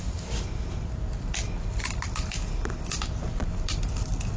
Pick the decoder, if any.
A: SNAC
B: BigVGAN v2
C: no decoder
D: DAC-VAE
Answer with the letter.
C